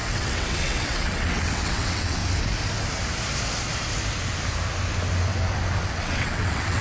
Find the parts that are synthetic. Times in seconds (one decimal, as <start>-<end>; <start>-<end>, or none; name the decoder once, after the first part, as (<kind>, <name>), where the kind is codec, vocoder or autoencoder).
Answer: 0.0-2.2 (vocoder, WaveNeXt); 5.8-6.8